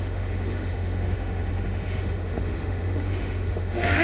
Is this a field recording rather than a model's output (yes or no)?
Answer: no